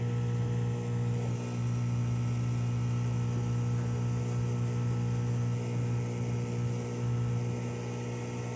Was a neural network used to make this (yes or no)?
no